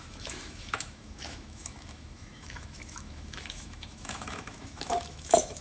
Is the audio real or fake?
fake